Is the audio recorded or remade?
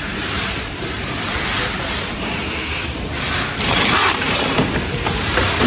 remade